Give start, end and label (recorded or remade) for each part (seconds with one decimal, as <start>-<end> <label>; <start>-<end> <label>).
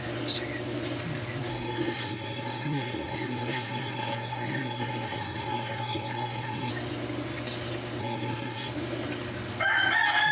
0.0-1.5 recorded; 1.5-6.7 remade; 6.7-8.0 recorded; 8.0-8.7 remade; 8.7-10.3 recorded